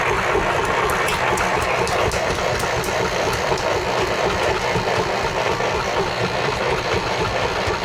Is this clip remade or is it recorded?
recorded